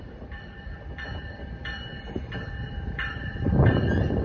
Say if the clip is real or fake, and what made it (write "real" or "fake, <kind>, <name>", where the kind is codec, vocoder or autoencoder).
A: fake, vocoder, BigVGAN v2